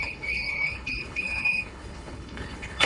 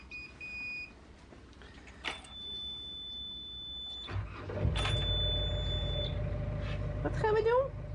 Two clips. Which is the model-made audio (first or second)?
first